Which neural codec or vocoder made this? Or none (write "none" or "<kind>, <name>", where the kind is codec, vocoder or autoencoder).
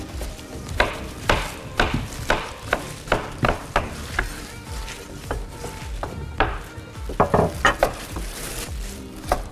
vocoder, BigVGAN v2